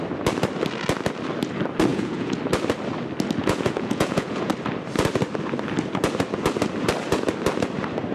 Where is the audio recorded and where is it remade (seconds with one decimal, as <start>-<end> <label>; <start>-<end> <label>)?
0.0-1.9 recorded; 1.9-2.4 remade; 2.4-3.4 recorded; 3.4-4.5 remade; 4.5-8.1 recorded